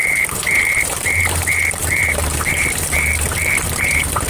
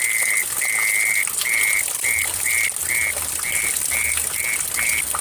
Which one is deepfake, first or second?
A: first